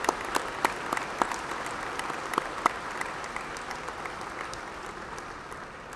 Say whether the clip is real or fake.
real